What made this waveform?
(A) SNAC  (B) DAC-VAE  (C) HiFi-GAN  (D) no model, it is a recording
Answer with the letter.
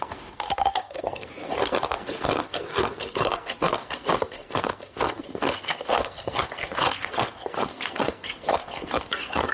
A